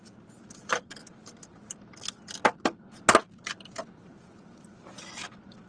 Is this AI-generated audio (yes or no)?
no